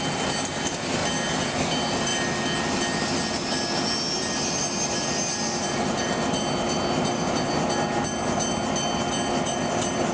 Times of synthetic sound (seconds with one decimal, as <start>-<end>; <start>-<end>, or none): none